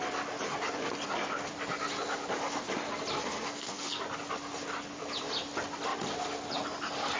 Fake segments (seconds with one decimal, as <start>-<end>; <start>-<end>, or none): 3.2-4.0